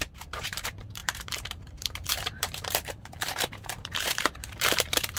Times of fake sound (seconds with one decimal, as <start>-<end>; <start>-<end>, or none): 0.0-5.2